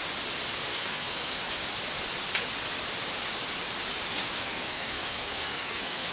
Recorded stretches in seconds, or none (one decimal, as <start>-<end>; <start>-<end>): 0.0-0.7; 1.4-4.4